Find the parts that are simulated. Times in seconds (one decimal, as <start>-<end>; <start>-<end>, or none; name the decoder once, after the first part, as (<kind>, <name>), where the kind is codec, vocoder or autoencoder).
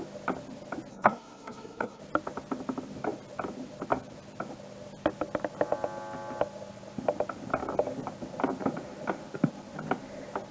0.9-2.0 (codec, SNAC)